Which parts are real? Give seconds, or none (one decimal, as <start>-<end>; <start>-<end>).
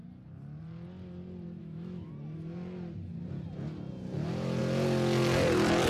0.0-1.6; 2.1-5.9